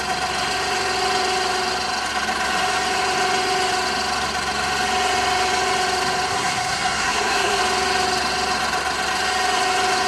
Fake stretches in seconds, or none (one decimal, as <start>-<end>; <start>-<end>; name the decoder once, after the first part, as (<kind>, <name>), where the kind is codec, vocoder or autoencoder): 6.3-7.6 (codec, SNAC)